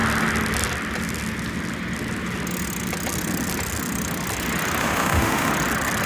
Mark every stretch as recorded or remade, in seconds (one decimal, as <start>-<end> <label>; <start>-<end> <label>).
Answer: 0.0-4.8 recorded; 4.8-5.5 remade; 5.5-6.1 recorded